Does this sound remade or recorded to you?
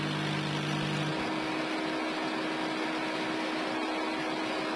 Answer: recorded